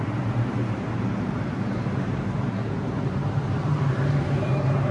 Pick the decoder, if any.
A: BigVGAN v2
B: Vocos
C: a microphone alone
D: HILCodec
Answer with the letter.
A